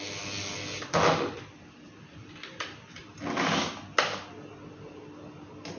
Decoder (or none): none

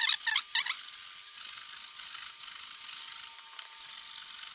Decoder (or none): none